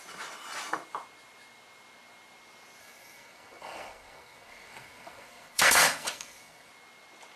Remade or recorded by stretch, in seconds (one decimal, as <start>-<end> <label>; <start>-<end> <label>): 0.0-2.8 recorded; 2.8-6.7 remade; 6.7-7.4 recorded